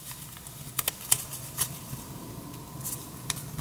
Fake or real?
real